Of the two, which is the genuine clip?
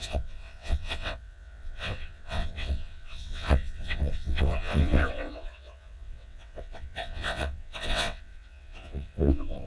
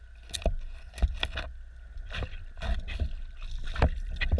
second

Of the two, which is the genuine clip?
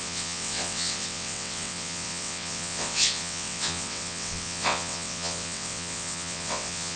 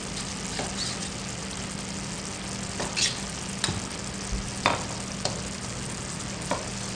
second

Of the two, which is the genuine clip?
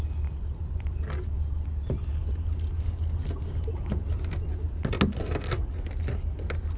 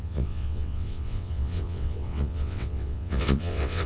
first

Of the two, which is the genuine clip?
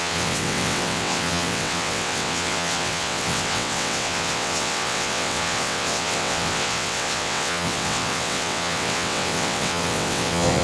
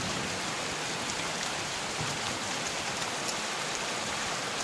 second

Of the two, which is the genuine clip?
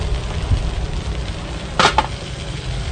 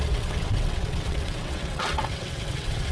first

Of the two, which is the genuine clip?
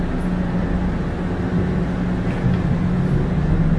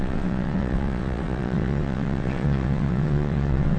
first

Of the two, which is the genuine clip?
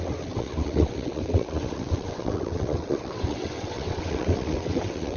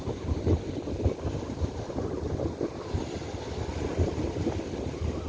second